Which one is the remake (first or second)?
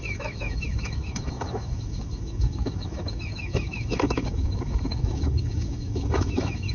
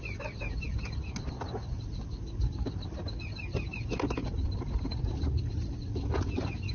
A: first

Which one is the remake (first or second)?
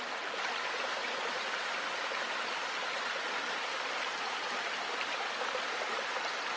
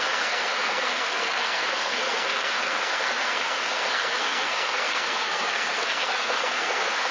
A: second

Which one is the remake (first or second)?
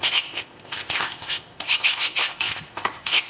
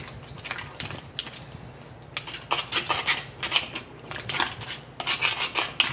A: first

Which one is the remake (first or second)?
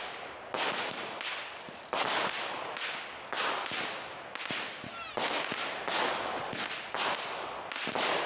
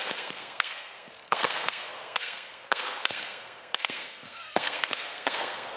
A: second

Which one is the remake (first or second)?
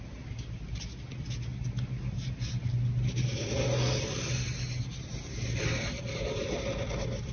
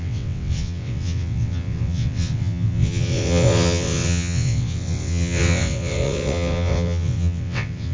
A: second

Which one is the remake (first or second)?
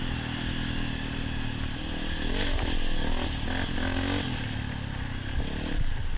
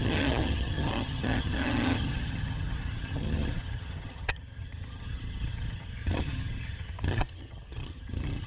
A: second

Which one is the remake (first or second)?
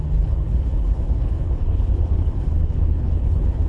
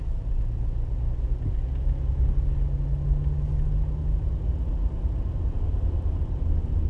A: first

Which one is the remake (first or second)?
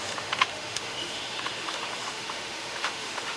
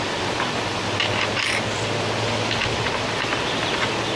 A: first